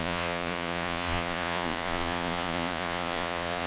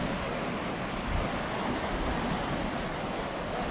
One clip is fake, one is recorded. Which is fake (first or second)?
first